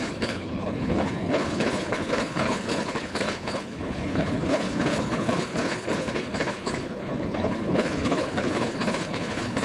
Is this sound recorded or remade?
remade